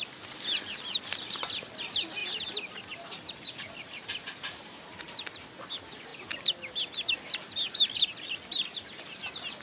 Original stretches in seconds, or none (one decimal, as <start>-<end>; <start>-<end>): 0.0-9.6